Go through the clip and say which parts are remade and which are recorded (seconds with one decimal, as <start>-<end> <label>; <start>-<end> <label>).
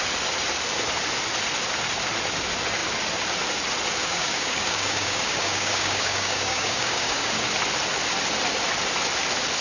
0.0-4.0 recorded; 4.0-7.3 remade; 7.3-9.6 recorded